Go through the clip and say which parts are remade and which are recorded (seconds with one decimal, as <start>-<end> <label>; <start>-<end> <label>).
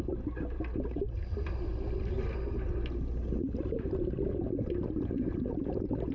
0.0-6.1 recorded